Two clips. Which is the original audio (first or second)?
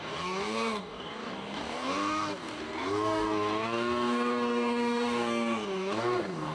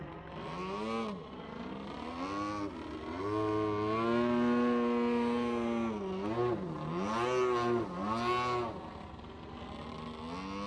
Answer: second